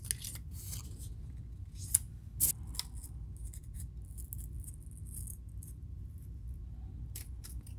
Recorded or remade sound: recorded